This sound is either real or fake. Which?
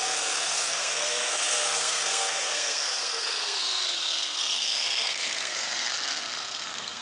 fake